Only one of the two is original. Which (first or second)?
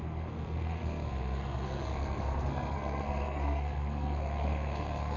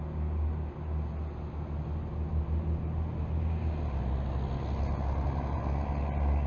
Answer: second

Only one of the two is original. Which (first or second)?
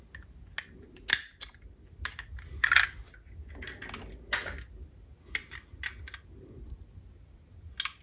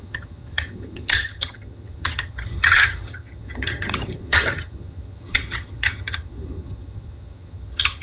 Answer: first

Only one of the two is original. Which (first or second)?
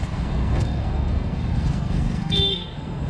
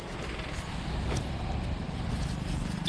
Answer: second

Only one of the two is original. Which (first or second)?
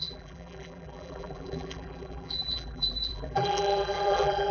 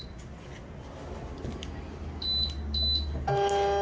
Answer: second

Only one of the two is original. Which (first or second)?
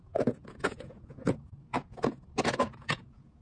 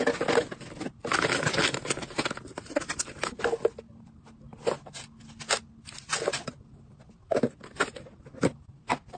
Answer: second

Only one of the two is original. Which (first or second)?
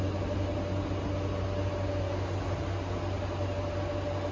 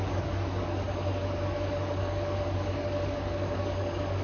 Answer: first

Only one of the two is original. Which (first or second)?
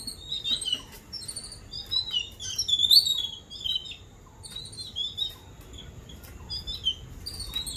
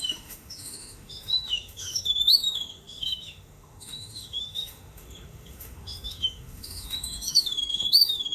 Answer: first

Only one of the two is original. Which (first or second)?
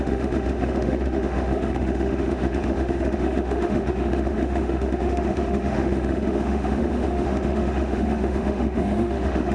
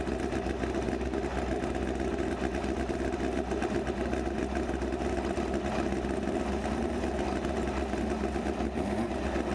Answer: second